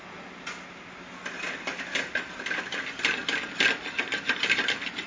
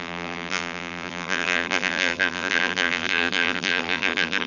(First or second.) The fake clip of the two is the second